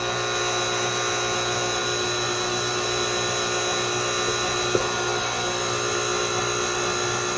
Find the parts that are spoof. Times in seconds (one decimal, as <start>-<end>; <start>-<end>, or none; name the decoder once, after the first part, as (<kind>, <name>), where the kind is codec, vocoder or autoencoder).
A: none